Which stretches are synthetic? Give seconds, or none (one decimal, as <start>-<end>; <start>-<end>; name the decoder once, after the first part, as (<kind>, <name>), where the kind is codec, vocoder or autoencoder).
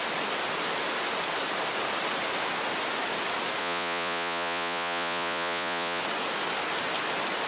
3.6-6.0 (vocoder, Vocos)